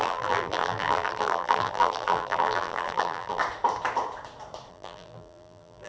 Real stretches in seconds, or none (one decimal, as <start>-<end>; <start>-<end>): 3.4-4.7